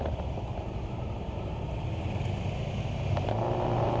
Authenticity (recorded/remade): recorded